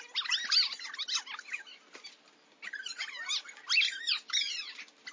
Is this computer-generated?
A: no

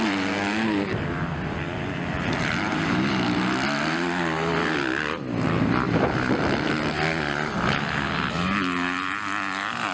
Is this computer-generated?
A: no